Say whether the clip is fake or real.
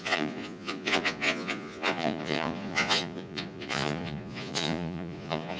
fake